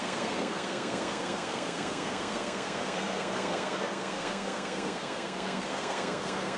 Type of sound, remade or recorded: remade